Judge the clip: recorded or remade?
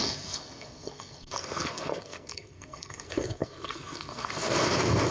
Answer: remade